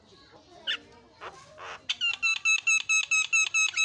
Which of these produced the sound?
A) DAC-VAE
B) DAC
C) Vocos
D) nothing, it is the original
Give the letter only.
D